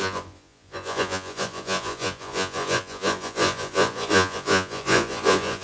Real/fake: fake